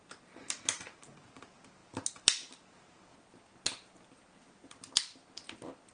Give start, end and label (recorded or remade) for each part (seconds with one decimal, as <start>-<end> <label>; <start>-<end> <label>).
0.0-3.1 remade; 3.1-5.9 recorded